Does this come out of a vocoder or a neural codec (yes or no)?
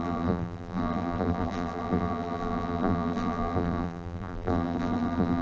yes